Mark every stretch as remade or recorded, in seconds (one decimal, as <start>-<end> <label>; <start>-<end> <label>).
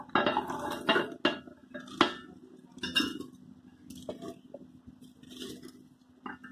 0.0-6.5 recorded